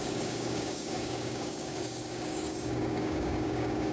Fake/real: fake